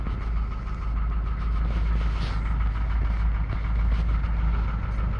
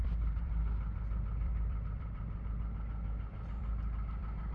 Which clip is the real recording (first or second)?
first